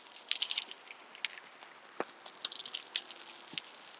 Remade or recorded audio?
recorded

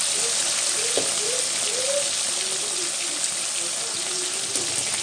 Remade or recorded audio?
recorded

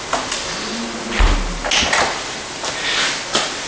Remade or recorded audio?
recorded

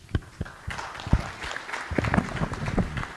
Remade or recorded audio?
recorded